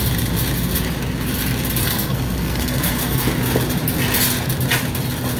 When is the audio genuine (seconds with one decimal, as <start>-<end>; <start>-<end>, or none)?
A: 0.0-1.8; 3.2-5.4